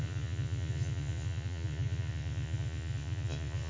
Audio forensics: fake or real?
fake